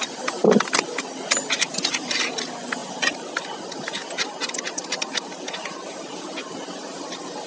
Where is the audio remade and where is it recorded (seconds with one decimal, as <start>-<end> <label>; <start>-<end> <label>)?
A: 0.0-7.5 recorded